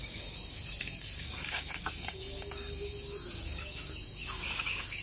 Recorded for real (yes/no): no